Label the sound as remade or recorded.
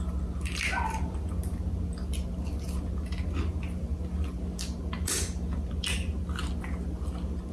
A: recorded